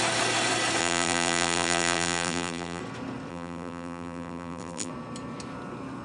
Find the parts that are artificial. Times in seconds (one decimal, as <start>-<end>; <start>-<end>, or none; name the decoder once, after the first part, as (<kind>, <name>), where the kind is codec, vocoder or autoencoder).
0.8-2.8 (vocoder, BigVGAN v2); 3.3-4.9